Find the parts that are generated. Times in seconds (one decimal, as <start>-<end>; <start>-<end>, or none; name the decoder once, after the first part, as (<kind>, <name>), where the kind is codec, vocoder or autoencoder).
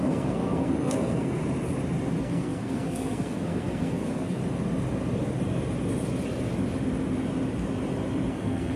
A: 0.0-1.4 (codec, SNAC); 2.2-4.4; 8.3-8.8